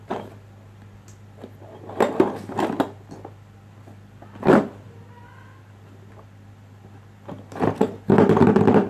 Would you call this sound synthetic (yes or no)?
no